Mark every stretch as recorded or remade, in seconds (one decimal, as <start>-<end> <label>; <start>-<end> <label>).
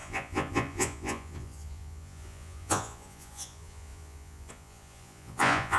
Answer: 0.0-5.8 remade